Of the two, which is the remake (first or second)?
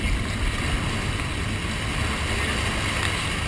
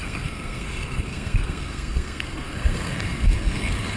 second